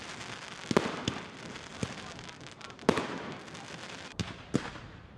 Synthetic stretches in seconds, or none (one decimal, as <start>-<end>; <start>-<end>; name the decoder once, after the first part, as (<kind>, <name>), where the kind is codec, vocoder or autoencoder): none

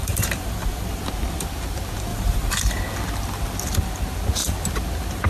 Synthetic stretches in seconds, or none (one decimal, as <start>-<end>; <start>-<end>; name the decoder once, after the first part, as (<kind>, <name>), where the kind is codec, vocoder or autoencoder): 0.0-1.0 (vocoder, BigVGAN v2); 2.1-2.8

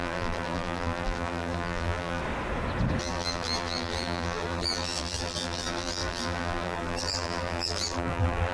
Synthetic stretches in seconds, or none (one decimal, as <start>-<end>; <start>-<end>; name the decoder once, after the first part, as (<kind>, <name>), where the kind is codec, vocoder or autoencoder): 0.0-2.2 (vocoder, BigVGAN v2); 3.0-8.5

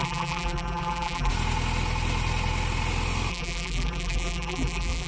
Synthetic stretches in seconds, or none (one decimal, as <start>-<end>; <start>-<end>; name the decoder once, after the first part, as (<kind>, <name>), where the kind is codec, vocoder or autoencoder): 0.0-1.3 (vocoder, BigVGAN v2); 3.3-5.1